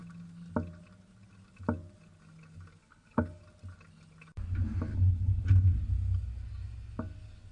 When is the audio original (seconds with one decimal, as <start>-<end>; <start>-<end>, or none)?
0.0-2.8; 3.4-4.9; 5.4-7.5

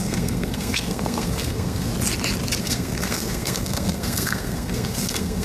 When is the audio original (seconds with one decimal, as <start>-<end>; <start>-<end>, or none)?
1.9-2.6

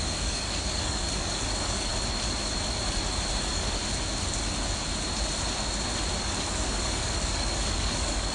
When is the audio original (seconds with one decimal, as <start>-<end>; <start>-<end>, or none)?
1.9-3.4; 3.8-6.2